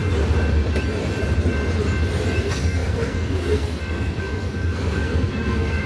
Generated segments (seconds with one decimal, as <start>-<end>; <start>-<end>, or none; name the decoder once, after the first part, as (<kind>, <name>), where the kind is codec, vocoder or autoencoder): 2.4-5.9 (codec, SNAC)

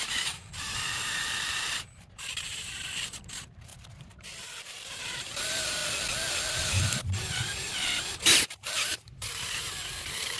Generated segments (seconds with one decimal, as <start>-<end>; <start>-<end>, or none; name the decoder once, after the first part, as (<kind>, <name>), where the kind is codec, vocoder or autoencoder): 0.0-3.7 (vocoder, BigVGAN v2); 4.4-5.8; 6.5-10.4

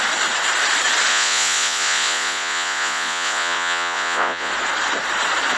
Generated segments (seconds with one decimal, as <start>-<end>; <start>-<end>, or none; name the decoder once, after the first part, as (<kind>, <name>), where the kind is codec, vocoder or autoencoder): 1.1-4.5 (vocoder, Vocos)

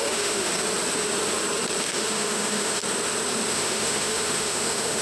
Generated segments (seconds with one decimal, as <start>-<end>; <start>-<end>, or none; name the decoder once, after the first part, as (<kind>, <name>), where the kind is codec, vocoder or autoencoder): 0.0-0.5 (autoencoder, DAC-VAE); 1.8-2.8; 3.5-5.0

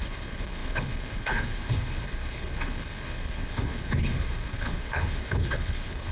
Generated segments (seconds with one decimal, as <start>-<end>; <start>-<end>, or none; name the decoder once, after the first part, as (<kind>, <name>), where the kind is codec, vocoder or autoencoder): 0.0-6.1 (codec, HILCodec)

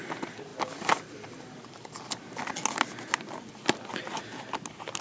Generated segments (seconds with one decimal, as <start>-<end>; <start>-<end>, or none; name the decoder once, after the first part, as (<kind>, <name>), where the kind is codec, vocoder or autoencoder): 0.5-2.5 (vocoder, BigVGAN v2); 3.5-4.5

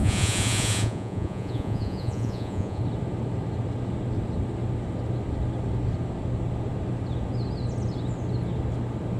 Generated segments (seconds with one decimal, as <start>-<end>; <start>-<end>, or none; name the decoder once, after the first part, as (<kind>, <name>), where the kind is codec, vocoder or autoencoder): 0.0-2.8 (vocoder, Vocos)